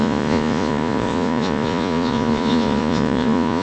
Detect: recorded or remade remade